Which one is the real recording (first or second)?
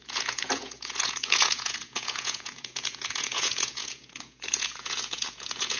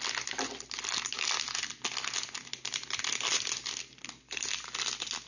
second